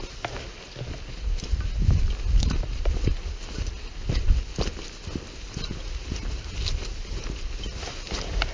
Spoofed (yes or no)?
no